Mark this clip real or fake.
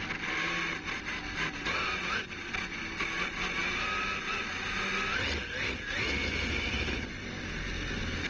real